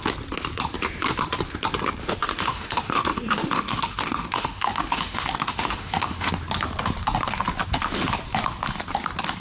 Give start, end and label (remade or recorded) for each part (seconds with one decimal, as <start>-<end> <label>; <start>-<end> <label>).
0.0-2.0 recorded; 2.0-6.3 remade; 6.3-9.4 recorded